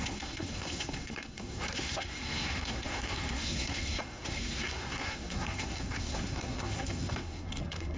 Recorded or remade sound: remade